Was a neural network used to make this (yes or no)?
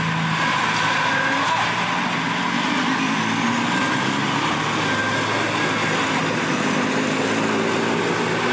no